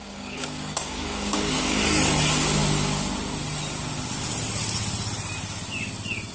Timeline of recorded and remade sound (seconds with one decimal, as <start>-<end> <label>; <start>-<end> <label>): 0.0-1.8 remade; 1.8-6.3 recorded